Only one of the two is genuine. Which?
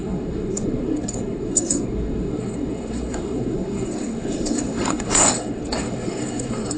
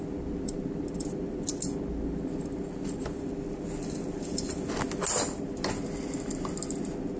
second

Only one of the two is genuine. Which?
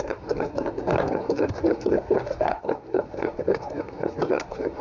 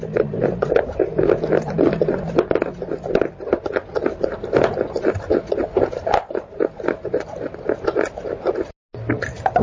second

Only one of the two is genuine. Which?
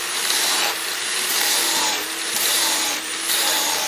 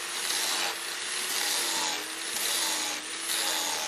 second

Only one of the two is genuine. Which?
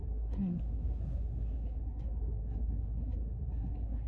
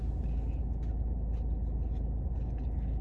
second